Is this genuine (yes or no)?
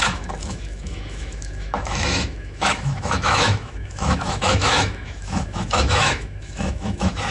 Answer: no